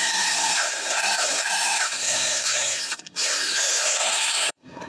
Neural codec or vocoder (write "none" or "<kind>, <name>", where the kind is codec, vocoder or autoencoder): codec, SNAC